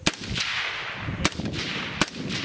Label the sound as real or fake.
real